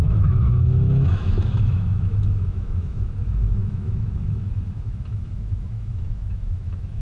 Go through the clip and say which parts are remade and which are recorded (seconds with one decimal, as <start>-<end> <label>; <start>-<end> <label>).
0.0-7.0 remade